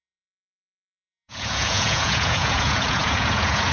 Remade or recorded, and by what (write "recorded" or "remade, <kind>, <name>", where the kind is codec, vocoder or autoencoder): remade, vocoder, Vocos